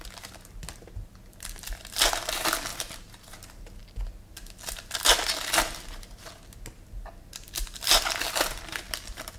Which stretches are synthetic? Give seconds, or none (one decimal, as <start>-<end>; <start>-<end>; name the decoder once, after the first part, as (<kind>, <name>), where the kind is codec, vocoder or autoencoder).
2.7-3.4 (vocoder, BigVGAN v2)